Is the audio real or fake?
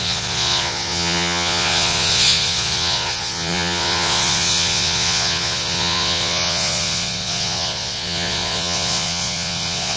fake